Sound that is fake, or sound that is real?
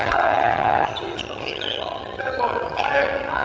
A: fake